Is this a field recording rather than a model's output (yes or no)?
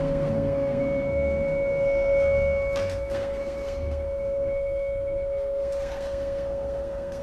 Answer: no